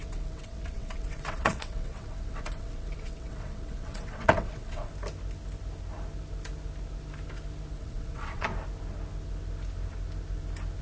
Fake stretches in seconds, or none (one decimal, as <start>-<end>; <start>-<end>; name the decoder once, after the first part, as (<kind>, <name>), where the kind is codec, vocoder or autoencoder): 0.0-4.9 (vocoder, WaveNeXt); 7.8-8.5